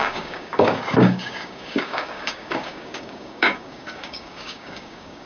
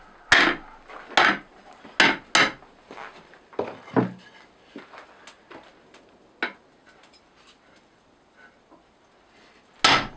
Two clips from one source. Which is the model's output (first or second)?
first